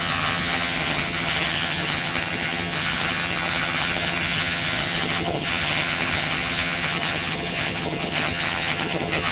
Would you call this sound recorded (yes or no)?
no